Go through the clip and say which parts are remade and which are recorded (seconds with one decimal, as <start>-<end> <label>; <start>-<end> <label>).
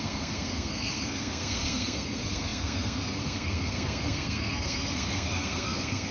0.0-6.1 remade